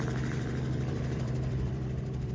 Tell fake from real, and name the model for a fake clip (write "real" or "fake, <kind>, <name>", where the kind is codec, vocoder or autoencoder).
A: fake, vocoder, BigVGAN v2